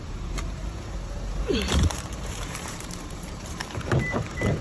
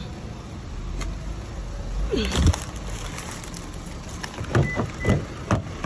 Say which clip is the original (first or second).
second